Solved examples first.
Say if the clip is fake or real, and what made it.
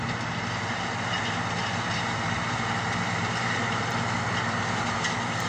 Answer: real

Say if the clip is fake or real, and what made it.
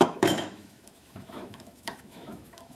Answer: fake, autoencoder, DAC-VAE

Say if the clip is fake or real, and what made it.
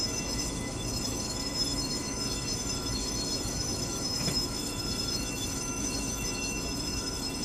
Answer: fake, autoencoder, DAC-VAE